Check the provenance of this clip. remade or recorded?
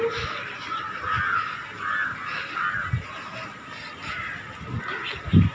recorded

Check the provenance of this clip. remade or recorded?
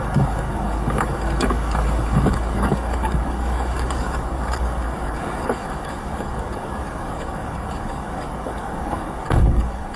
remade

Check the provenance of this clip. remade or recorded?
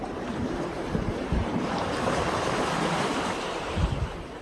remade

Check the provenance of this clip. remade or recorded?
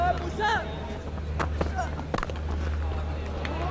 recorded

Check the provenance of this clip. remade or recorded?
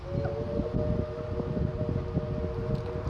recorded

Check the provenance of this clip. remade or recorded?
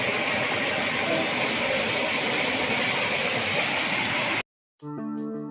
recorded